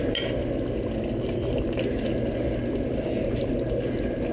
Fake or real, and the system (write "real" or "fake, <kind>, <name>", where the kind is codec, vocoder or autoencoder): real